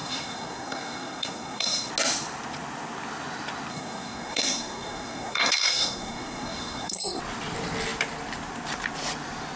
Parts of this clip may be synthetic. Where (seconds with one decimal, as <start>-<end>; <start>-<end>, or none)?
0.0-1.9; 3.7-7.2